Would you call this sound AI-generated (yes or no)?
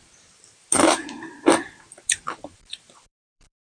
yes